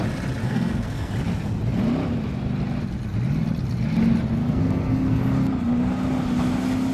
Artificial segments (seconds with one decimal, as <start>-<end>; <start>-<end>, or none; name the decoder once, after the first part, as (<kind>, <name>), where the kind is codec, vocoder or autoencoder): 0.4-1.1 (codec, SNAC); 4.4-5.2